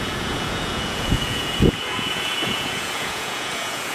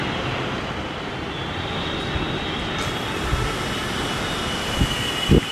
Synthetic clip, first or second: first